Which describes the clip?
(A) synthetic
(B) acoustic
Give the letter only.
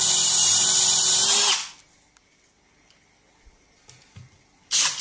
B